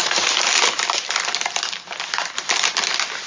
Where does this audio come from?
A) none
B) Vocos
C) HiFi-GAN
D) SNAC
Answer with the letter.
A